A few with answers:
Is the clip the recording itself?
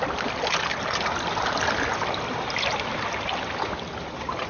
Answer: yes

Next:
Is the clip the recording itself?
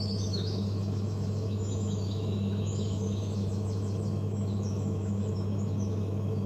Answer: no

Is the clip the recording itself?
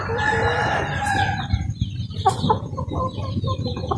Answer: yes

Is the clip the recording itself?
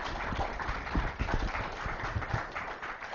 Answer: no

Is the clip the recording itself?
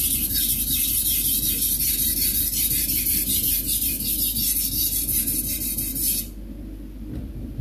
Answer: yes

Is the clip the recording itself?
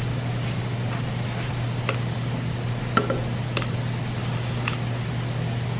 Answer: yes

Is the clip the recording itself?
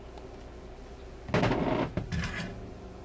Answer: yes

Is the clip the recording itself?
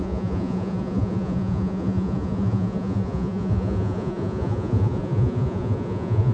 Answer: no